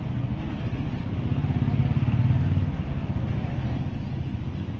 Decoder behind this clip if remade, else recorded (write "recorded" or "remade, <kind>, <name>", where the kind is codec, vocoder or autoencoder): recorded